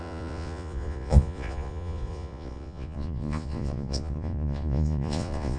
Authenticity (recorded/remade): remade